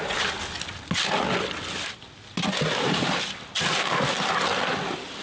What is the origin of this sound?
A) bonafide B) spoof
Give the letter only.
A